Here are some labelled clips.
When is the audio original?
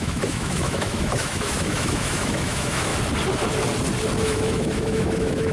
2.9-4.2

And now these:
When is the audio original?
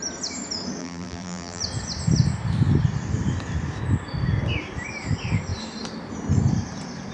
0.0-0.8; 1.6-7.1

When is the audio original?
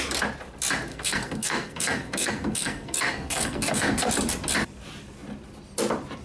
0.0-0.9; 4.1-6.2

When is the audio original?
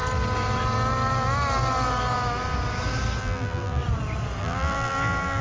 0.0-3.2; 3.8-4.4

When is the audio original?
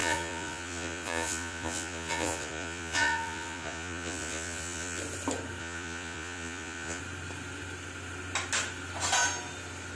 5.0-5.6; 7.0-10.0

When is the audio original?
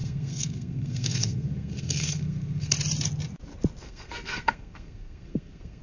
2.7-3.8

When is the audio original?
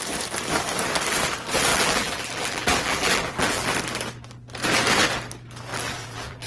0.0-1.7; 3.8-5.7